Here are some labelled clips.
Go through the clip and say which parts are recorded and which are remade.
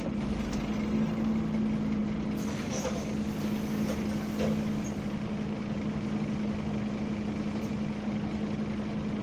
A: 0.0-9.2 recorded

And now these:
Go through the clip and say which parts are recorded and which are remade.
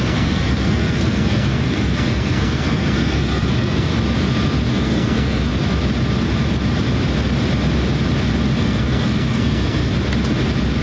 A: 0.0-3.9 remade; 3.9-4.7 recorded; 4.7-5.5 remade; 5.5-8.6 recorded; 8.6-9.9 remade; 9.9-10.8 recorded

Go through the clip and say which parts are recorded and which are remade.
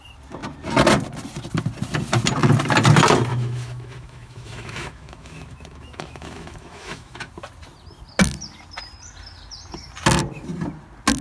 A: 0.0-3.3 recorded; 3.3-7.3 remade; 7.3-11.2 recorded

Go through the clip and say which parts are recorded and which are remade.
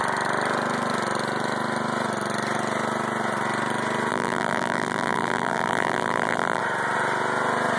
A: 0.0-4.1 recorded; 4.1-6.6 remade; 6.6-7.8 recorded